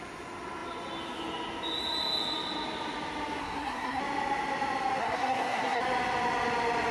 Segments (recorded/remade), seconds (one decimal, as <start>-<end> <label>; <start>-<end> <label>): 0.0-3.4 recorded; 3.4-4.0 remade; 4.0-5.0 recorded; 5.0-5.8 remade; 5.8-6.9 recorded